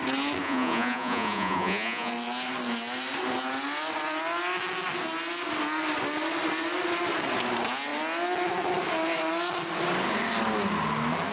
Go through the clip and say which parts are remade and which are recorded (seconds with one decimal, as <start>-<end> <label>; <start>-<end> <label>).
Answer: 0.0-0.4 recorded; 0.4-2.1 remade; 2.1-11.3 recorded